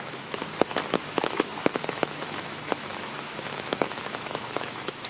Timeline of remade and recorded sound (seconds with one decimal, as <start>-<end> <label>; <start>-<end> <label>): 0.0-0.4 remade; 0.4-0.9 recorded; 0.9-5.1 remade